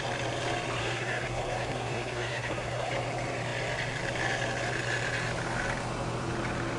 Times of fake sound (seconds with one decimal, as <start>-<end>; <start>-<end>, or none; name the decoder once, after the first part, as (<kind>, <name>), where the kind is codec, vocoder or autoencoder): 0.8-2.9 (codec, SNAC)